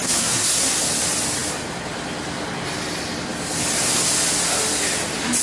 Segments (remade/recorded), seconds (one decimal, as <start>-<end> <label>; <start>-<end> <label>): 0.0-0.8 remade; 0.8-5.4 recorded